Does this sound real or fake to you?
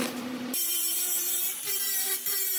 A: fake